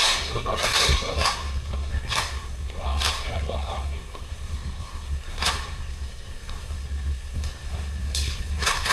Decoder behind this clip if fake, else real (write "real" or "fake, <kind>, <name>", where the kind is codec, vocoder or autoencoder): fake, codec, SNAC